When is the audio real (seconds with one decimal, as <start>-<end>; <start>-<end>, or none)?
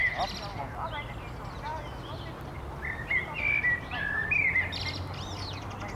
0.0-5.9